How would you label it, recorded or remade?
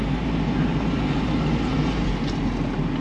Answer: recorded